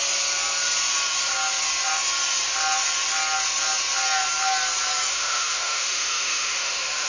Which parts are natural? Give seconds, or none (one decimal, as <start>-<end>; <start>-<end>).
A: 0.0-5.1